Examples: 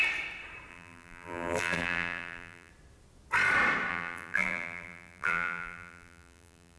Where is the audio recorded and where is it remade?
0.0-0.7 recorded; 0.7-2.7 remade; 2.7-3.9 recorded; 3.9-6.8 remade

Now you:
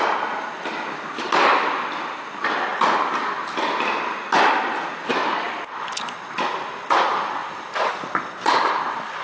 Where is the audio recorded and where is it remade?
0.0-7.4 recorded; 7.4-9.2 remade

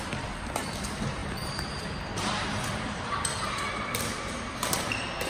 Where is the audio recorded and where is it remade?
0.0-1.2 recorded; 1.2-4.4 remade; 4.4-5.3 recorded

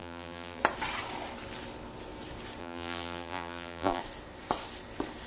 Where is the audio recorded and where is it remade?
0.0-0.6 remade; 0.6-2.6 recorded; 2.6-4.0 remade; 4.0-5.3 recorded

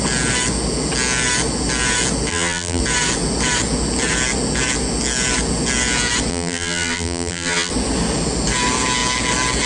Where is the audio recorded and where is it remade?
0.0-2.3 recorded; 2.3-2.8 remade; 2.8-6.3 recorded; 6.3-7.7 remade; 7.7-9.7 recorded

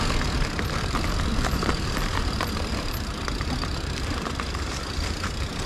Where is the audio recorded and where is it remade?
0.0-1.3 recorded; 1.3-4.7 remade; 4.7-5.7 recorded

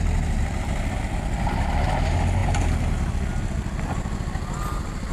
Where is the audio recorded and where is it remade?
0.0-5.1 recorded

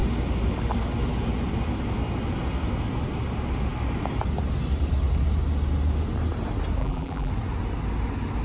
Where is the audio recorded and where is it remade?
0.0-6.8 recorded; 6.8-7.3 remade; 7.3-8.4 recorded